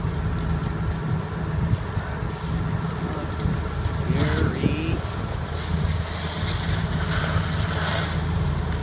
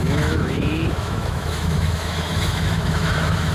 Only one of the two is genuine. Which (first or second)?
first